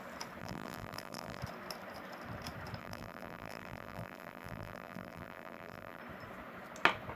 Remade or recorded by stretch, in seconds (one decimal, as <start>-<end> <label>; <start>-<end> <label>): 0.0-0.4 recorded; 0.4-1.4 remade; 1.4-2.8 recorded; 2.8-6.0 remade; 6.0-7.2 recorded